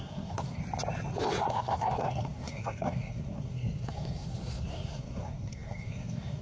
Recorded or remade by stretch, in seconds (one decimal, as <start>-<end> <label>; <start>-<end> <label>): 0.0-0.6 remade; 0.6-1.5 recorded; 1.5-6.4 remade